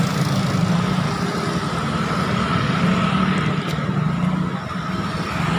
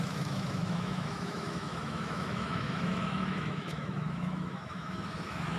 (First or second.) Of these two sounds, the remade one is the second